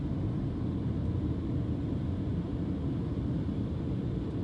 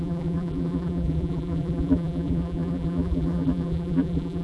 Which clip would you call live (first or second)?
first